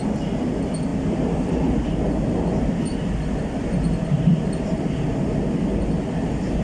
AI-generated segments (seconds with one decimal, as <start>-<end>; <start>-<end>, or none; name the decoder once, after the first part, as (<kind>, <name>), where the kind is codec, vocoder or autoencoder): 0.9-4.9 (vocoder, BigVGAN v2)